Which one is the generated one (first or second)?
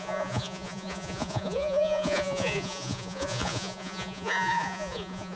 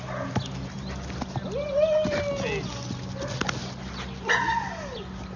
first